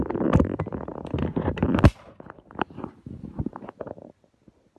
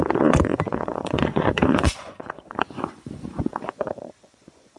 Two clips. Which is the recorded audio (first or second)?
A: first